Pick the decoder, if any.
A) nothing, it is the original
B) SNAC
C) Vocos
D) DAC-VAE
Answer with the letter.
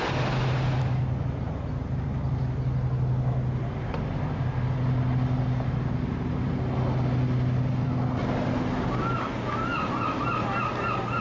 A